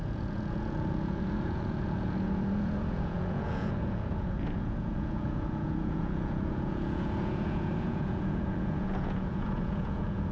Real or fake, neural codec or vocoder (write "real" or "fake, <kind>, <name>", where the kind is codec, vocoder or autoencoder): fake, vocoder, Vocos